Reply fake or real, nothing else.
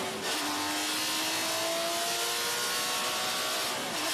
real